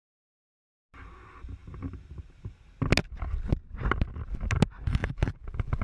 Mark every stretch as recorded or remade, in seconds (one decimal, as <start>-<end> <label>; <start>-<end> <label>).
0.0-5.0 recorded; 5.0-5.8 remade